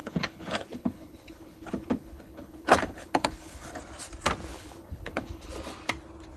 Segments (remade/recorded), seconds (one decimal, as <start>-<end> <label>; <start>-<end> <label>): 0.0-3.8 remade; 3.8-4.5 recorded; 4.5-5.5 remade; 5.5-6.4 recorded